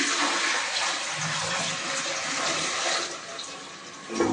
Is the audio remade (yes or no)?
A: no